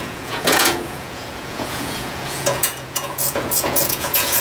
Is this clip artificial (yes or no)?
yes